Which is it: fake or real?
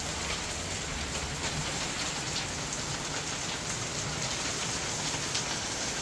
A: real